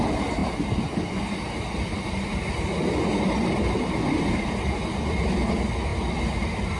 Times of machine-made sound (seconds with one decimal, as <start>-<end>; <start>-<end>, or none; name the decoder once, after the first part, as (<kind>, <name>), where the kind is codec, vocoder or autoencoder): none

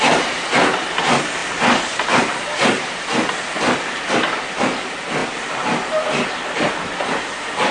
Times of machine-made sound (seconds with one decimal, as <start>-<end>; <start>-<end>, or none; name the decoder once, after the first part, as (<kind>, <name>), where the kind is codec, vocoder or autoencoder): none

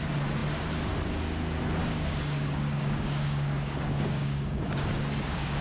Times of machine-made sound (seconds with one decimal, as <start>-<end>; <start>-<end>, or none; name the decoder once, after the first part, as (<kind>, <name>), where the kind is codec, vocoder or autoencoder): 1.8-5.6 (codec, DAC)

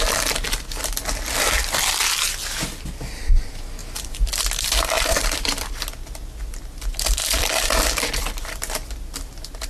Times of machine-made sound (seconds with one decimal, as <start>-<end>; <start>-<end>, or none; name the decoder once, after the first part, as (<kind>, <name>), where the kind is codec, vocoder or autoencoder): 3.8-5.9 (vocoder, BigVGAN v2); 7.2-8.5

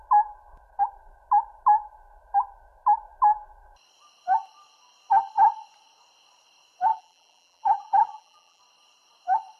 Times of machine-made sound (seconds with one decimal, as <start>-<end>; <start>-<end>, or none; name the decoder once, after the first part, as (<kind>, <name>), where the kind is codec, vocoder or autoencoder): 6.9-8.6 (vocoder, BigVGAN v2)

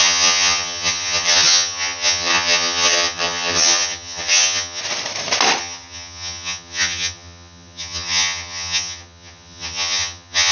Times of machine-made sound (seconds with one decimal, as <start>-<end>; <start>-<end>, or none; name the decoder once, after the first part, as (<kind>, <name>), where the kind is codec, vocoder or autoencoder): 0.0-4.8 (vocoder, HiFi-GAN); 5.6-10.5

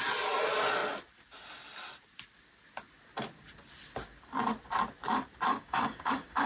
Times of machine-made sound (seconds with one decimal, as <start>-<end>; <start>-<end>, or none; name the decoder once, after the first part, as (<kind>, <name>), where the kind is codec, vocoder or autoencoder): 5.5-6.5 (codec, DAC)

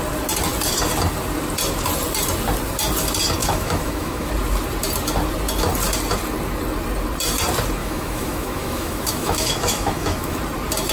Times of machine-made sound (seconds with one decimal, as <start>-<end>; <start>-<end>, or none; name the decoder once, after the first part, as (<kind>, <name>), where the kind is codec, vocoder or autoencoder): 3.4-4.3 (autoencoder, DAC-VAE); 7.8-10.4